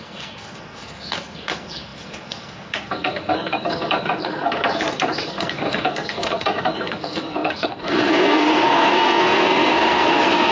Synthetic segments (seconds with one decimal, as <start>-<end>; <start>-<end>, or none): 0.0-10.5